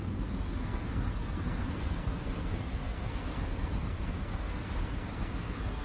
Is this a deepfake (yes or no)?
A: yes